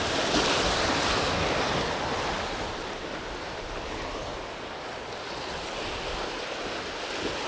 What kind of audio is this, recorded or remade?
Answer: recorded